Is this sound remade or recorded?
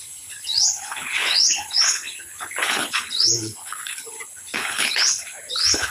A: remade